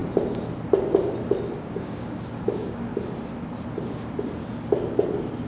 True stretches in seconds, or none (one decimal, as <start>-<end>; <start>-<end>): 0.0-1.6; 2.9-3.8; 4.4-5.5